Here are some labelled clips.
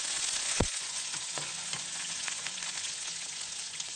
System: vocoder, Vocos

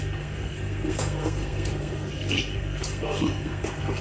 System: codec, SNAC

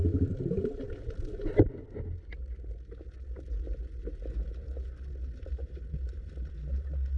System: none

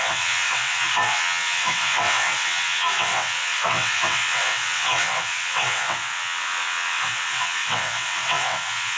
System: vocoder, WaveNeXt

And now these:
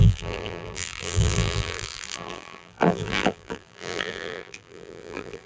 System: vocoder, BigVGAN v2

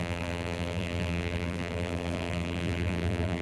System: vocoder, BigVGAN v2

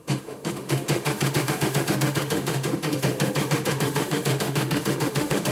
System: autoencoder, DAC-VAE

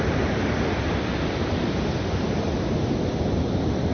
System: none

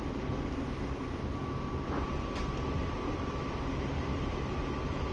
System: none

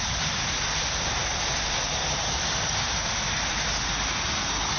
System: none